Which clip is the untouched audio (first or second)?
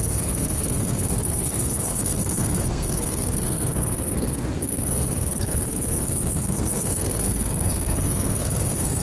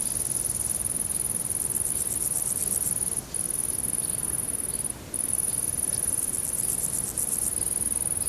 second